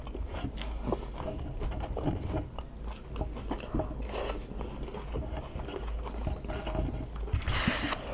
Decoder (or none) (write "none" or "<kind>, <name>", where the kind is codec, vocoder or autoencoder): none